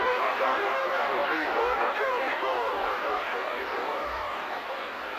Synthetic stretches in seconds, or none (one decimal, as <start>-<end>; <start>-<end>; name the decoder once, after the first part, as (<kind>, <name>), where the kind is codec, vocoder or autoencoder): 0.0-5.2 (codec, DAC)